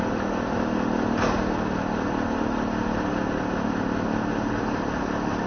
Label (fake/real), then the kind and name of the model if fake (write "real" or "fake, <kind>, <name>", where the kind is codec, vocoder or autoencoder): real